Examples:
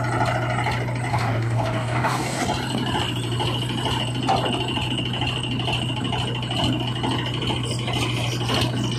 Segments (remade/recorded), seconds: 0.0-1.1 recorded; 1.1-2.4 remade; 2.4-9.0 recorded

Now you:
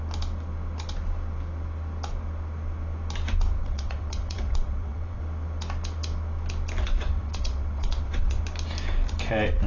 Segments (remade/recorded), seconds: 0.0-3.6 recorded; 3.6-5.2 remade; 5.2-6.8 recorded; 6.8-8.4 remade; 8.4-9.7 recorded

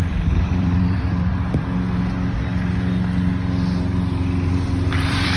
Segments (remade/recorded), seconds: 0.0-1.3 remade; 1.3-4.5 recorded; 4.5-5.4 remade

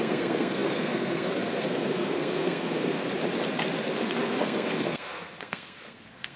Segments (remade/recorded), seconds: 0.0-3.0 remade; 3.0-3.9 recorded; 3.9-6.4 remade

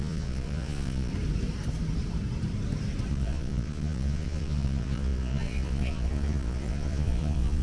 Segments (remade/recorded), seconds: 0.0-1.1 remade; 1.1-3.1 recorded; 3.1-7.6 remade

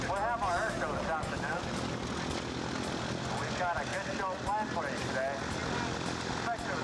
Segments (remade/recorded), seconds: 0.0-6.8 recorded

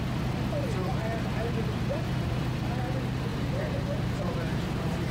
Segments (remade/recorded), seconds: 0.0-0.9 recorded; 0.9-2.5 remade; 2.5-3.3 recorded; 3.3-5.1 remade

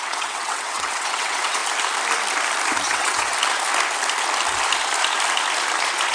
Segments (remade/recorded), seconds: 0.0-1.6 remade; 1.6-2.8 recorded; 2.8-3.3 remade; 3.3-6.1 recorded